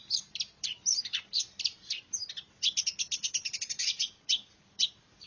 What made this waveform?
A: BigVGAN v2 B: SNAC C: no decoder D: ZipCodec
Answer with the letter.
A